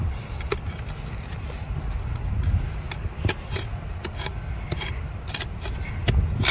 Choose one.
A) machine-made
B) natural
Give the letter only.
B